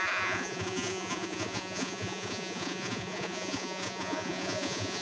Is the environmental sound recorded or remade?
remade